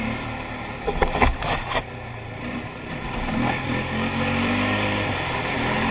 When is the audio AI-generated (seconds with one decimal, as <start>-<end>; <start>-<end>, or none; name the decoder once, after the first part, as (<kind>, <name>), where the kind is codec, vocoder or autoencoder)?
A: 0.0-1.3 (vocoder, BigVGAN v2); 2.8-5.9